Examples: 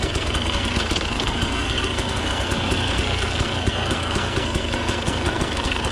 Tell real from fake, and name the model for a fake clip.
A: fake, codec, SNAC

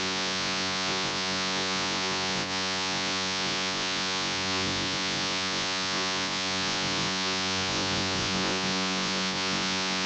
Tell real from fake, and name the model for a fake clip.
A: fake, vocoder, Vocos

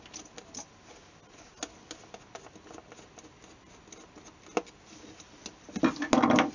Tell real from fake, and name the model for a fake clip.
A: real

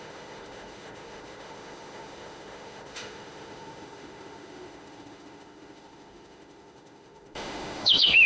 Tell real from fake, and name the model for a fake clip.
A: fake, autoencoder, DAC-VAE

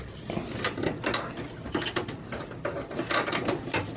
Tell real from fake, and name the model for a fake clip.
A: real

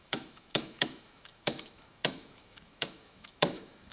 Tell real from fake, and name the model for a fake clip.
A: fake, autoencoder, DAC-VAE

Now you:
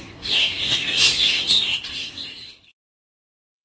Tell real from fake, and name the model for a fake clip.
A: fake, codec, SNAC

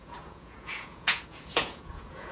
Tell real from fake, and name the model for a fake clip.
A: fake, vocoder, Vocos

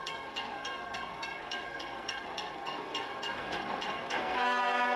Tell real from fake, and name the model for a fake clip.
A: fake, codec, SNAC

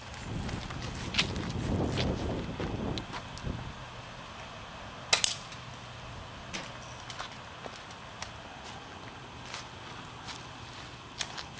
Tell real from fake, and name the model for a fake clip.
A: real